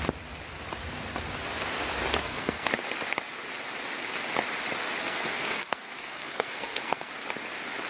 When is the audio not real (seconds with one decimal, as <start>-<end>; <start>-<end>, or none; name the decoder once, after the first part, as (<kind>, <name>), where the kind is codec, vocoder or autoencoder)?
2.2-2.7 (codec, SNAC); 5.0-7.1